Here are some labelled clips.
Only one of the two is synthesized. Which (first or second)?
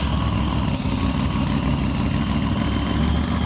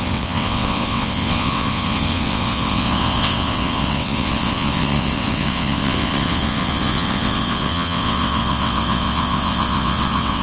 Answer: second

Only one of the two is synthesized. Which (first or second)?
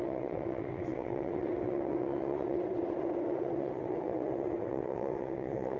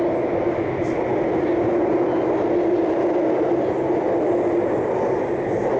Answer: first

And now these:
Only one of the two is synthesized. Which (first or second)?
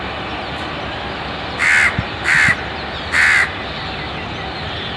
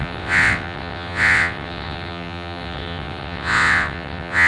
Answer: second